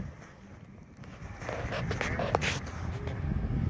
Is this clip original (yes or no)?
yes